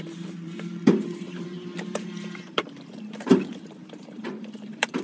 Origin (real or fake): fake